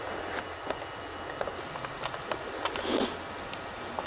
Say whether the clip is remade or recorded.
recorded